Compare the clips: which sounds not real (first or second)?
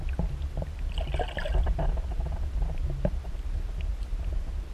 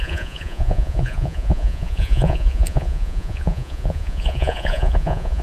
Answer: second